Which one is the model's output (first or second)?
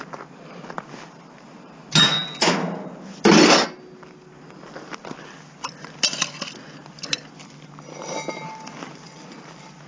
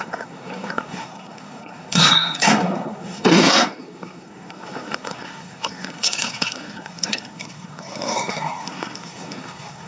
second